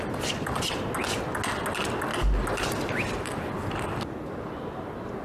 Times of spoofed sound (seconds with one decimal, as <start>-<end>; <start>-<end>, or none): none